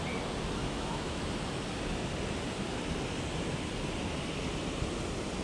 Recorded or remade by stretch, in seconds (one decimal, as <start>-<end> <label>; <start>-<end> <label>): 0.0-0.6 recorded; 0.6-1.3 remade; 1.3-5.4 recorded